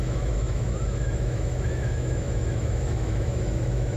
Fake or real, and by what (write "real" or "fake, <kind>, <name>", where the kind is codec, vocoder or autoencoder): fake, autoencoder, DAC-VAE